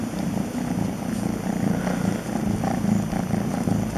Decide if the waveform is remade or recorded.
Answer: recorded